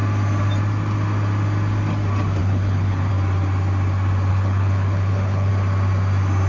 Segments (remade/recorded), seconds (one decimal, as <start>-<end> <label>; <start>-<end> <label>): 0.0-2.4 recorded; 2.4-3.1 remade; 3.1-4.3 recorded; 4.3-5.5 remade; 5.5-6.5 recorded